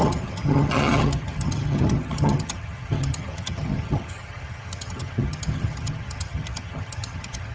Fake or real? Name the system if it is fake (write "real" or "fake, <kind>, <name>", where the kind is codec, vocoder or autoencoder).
fake, vocoder, HiFi-GAN